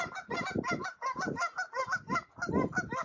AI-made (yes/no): no